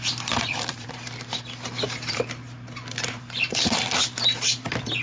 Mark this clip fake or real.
fake